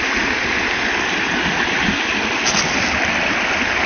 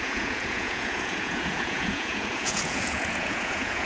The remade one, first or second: second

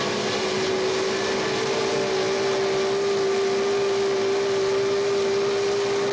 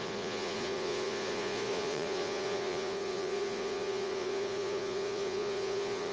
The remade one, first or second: second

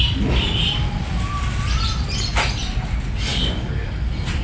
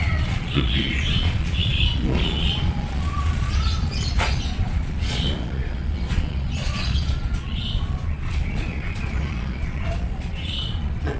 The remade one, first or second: second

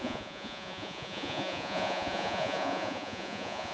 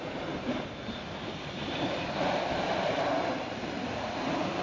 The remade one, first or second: first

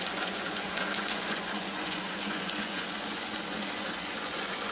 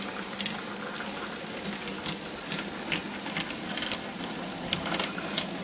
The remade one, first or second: first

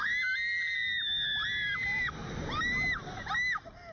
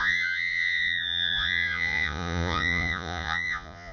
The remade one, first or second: second